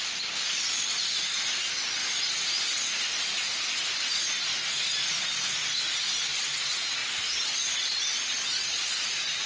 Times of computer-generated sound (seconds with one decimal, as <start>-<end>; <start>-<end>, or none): 0.0-4.5; 6.0-7.0; 8.0-9.5